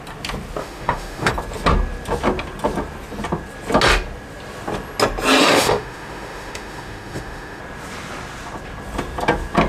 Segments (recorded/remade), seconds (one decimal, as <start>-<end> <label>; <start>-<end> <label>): 0.0-0.6 recorded; 0.6-1.3 remade; 1.3-5.4 recorded; 5.4-7.6 remade; 7.6-9.7 recorded